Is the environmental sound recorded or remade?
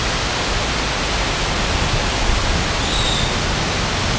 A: recorded